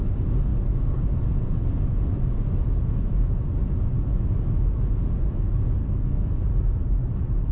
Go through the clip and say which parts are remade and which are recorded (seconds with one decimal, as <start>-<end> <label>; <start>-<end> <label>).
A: 0.0-5.8 recorded; 5.8-6.4 remade; 6.4-7.5 recorded